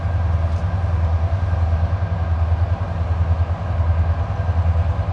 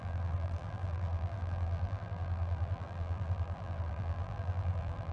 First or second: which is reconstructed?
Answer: second